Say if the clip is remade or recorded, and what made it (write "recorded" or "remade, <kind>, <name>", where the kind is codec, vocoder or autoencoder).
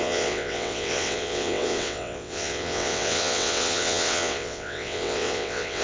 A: remade, vocoder, WaveNeXt